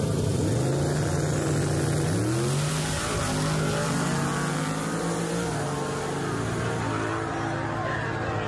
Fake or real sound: real